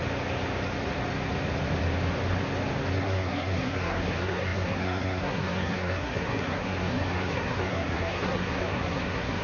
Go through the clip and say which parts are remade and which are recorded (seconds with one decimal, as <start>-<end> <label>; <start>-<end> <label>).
0.0-2.9 recorded; 2.9-9.4 remade